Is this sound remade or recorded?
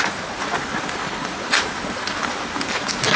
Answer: recorded